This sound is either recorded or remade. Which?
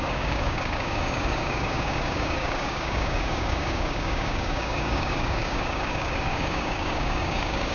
remade